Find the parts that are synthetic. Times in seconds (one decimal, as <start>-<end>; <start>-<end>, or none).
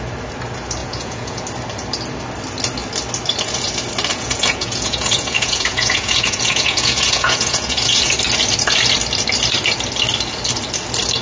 0.8-1.4; 4.1-8.1